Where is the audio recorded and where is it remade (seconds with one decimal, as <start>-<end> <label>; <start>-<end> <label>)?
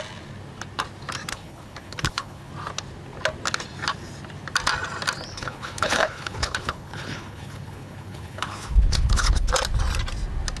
0.0-1.3 recorded; 1.3-2.5 remade; 2.5-5.3 recorded; 5.3-9.5 remade; 9.5-10.6 recorded